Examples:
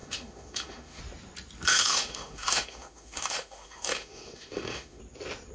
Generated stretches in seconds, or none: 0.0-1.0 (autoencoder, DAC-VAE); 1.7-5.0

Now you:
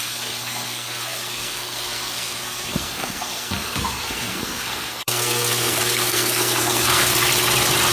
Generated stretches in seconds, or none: 0.0-7.1 (codec, SNAC)

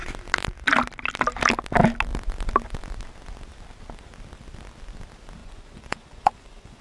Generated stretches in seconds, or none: 5.4-6.8 (vocoder, Vocos)

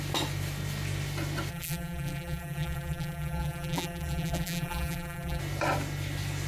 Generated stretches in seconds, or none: 1.5-5.4 (vocoder, BigVGAN v2)

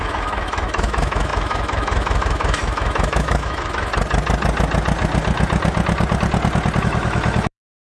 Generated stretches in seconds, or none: 0.0-3.9 (autoencoder, DAC-VAE); 6.8-7.9

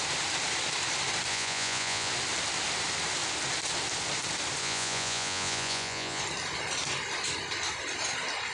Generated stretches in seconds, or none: 1.3-2.1 (vocoder, Vocos); 4.6-6.2